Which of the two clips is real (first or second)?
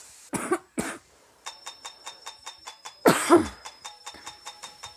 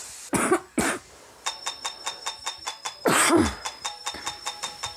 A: second